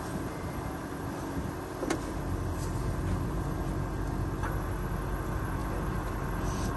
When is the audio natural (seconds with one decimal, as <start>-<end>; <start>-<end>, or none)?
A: 0.0-6.8